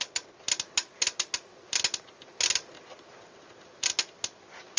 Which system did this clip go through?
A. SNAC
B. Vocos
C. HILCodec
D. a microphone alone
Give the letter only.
D